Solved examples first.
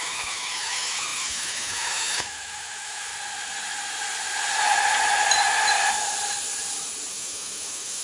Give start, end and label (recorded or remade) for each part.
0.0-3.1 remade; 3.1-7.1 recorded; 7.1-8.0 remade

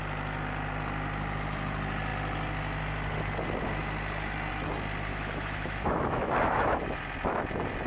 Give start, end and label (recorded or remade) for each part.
0.0-5.1 recorded; 5.1-7.0 remade; 7.0-7.9 recorded

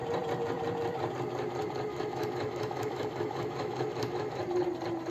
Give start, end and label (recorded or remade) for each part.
0.0-1.9 recorded; 1.9-4.4 remade; 4.4-5.1 recorded